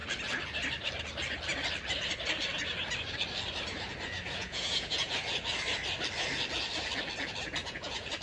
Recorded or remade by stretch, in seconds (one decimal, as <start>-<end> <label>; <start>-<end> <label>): 0.0-4.4 recorded; 4.4-5.1 remade; 5.1-7.6 recorded; 7.6-8.2 remade